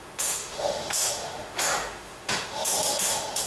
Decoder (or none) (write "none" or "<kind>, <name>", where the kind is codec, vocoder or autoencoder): autoencoder, DAC-VAE